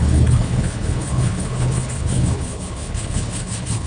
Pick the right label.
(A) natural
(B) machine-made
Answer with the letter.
B